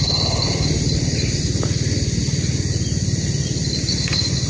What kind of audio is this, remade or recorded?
recorded